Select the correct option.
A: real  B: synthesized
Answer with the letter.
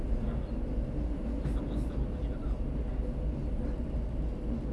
A